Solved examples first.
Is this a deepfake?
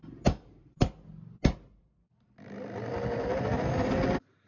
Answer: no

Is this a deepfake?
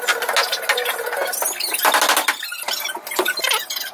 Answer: no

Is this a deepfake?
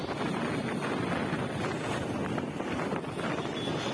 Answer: no